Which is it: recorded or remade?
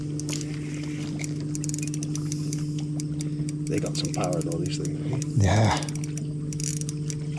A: recorded